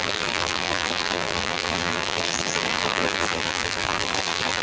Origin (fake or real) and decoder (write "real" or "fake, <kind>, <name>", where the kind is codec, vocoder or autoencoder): fake, vocoder, BigVGAN v2